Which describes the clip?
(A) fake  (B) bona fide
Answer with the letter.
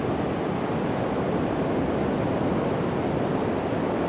B